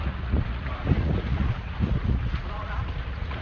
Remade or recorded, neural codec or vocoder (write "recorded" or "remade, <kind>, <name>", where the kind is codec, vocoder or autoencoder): remade, vocoder, Vocos